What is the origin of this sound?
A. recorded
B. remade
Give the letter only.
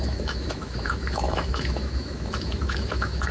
B